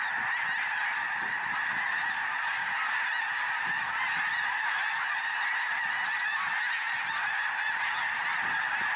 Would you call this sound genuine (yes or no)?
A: yes